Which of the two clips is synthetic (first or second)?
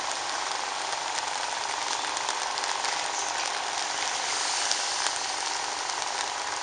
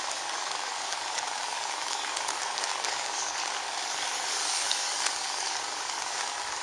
second